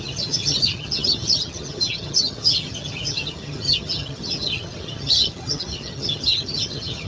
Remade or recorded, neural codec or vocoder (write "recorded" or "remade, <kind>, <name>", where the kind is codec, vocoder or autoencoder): remade, vocoder, HiFi-GAN